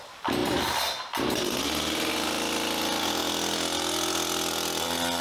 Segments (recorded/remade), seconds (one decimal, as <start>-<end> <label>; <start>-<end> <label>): 0.0-5.2 recorded